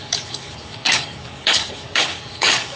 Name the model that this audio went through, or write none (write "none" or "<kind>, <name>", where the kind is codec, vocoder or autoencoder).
codec, DAC